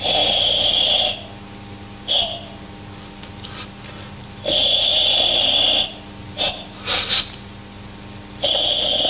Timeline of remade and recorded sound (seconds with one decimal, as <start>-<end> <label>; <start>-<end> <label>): 0.0-9.1 recorded